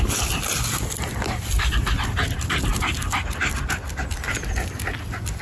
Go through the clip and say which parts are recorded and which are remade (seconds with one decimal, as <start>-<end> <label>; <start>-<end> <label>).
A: 0.0-5.4 recorded